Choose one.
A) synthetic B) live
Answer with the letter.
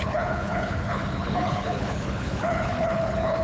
A